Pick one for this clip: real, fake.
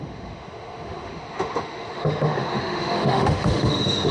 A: fake